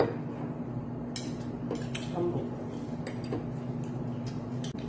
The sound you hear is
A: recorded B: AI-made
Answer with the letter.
A